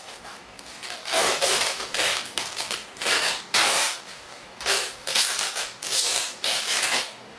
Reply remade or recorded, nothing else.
remade